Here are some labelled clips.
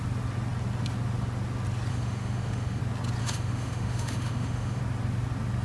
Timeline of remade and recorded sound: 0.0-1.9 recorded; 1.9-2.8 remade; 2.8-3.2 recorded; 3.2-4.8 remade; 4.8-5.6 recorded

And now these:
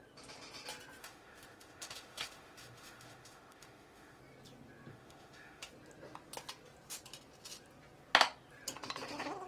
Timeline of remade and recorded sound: 0.0-1.0 recorded; 1.0-4.2 remade; 4.2-4.9 recorded; 4.9-5.7 remade; 5.7-9.5 recorded

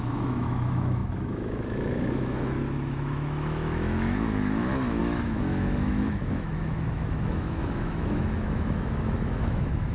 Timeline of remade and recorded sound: 0.0-9.9 remade

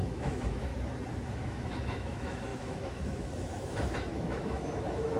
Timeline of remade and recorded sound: 0.0-0.7 remade; 0.7-1.3 recorded; 1.3-5.2 remade

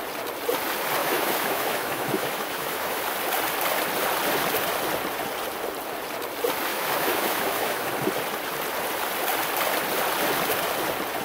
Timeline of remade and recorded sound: 0.0-1.0 recorded; 1.0-3.0 remade; 3.0-6.7 recorded; 6.7-7.9 remade; 7.9-11.2 recorded

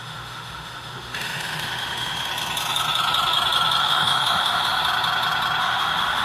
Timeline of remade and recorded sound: 0.0-2.3 remade; 2.3-3.8 recorded; 3.8-4.8 remade; 4.8-5.6 recorded; 5.6-6.2 remade

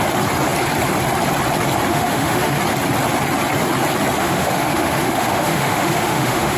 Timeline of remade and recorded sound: 0.0-1.9 recorded; 1.9-2.6 remade; 2.6-4.2 recorded; 4.2-6.6 remade